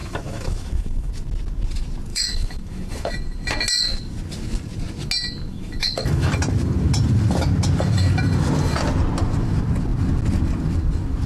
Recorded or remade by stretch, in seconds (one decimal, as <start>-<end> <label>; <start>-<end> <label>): 0.0-1.1 remade; 1.1-2.1 recorded; 2.1-3.1 remade; 3.1-5.5 recorded; 5.5-6.3 remade; 6.3-11.3 recorded